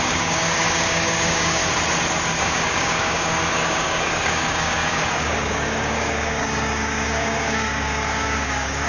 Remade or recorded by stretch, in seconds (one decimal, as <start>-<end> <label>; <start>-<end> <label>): 0.0-1.6 remade; 1.6-2.4 recorded; 2.4-8.9 remade